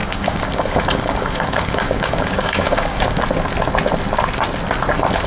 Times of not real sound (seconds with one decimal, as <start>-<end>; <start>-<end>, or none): 0.0-3.2